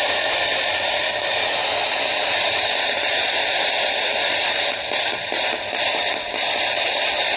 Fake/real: fake